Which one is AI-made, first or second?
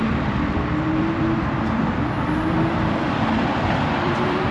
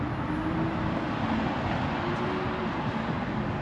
first